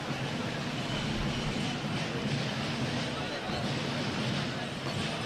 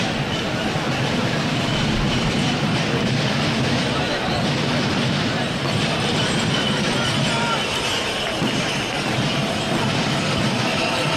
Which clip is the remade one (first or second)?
second